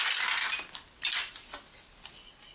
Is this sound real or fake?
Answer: real